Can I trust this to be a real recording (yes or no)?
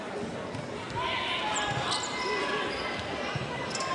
yes